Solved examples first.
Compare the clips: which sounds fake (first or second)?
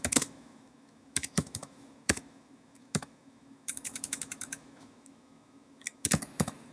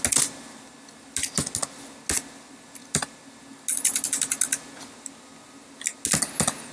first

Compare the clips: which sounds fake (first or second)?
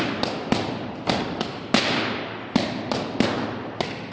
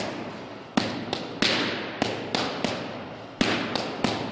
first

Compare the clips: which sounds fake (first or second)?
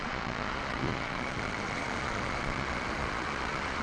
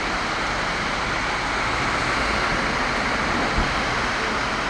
first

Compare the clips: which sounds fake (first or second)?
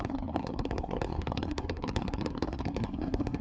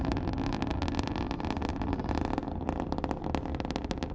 first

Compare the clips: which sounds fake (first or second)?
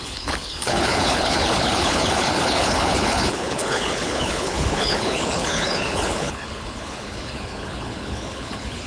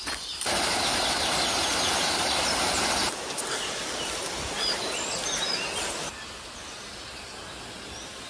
first